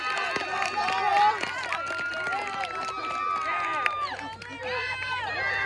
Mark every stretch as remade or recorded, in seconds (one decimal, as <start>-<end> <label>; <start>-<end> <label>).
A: 0.0-5.7 recorded